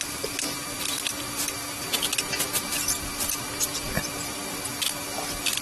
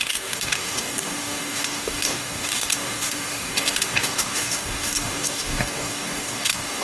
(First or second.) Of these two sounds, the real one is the first